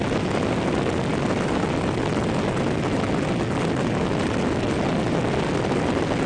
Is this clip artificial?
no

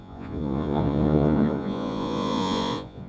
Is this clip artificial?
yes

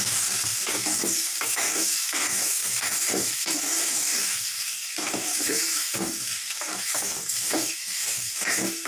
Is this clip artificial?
yes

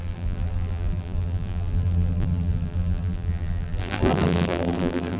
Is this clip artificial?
yes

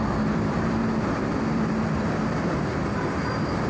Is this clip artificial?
yes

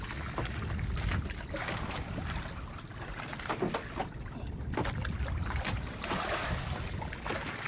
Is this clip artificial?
no